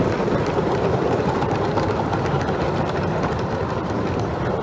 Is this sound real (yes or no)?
no